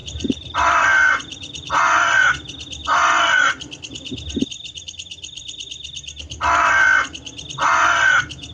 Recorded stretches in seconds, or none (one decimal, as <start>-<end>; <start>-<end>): 1.7-8.5